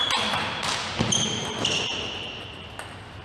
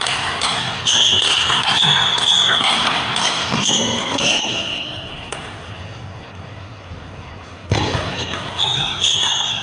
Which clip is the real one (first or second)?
first